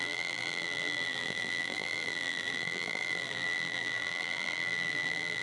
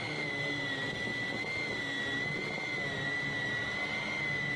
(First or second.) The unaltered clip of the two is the second